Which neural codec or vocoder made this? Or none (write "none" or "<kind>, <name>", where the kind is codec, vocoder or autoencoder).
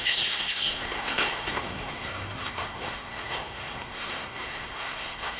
codec, SNAC